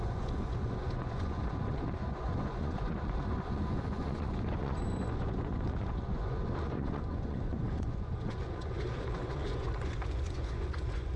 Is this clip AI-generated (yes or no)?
yes